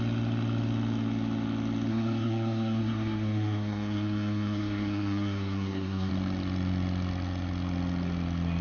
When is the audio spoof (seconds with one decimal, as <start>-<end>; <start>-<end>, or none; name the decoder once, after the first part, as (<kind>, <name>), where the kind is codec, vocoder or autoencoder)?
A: 1.9-6.1 (codec, SNAC)